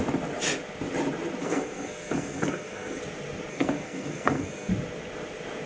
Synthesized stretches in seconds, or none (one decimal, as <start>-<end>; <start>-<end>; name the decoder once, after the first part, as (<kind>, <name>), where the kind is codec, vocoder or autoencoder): 1.4-3.0 (codec, SNAC); 3.5-4.7